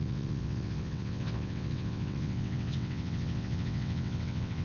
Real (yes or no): no